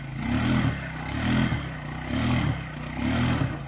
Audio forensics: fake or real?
real